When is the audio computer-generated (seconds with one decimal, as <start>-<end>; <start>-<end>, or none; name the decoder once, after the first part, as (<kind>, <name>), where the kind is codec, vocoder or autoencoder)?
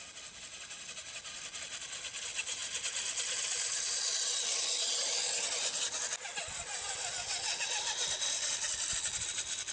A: none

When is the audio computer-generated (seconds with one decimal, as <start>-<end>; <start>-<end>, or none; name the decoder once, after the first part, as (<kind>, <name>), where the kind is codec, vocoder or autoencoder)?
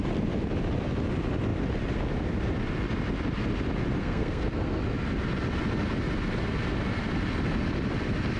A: 4.0-4.8 (codec, SNAC)